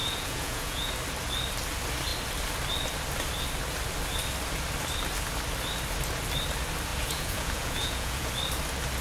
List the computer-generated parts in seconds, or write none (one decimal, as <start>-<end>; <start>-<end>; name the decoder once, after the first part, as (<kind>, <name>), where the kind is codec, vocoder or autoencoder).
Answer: 0.0-0.9 (vocoder, Vocos); 6.9-8.3